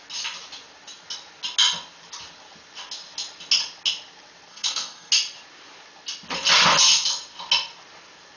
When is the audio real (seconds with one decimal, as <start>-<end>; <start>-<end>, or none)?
0.0-4.5; 5.1-8.4